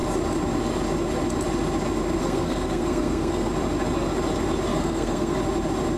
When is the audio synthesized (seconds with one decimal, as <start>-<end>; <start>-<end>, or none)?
2.2-3.5; 4.7-5.4